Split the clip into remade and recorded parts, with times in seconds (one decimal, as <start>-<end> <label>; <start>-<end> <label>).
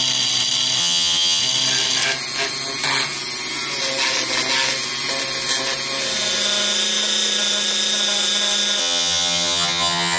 0.0-0.8 recorded; 0.8-1.4 remade; 1.4-8.8 recorded; 8.8-10.2 remade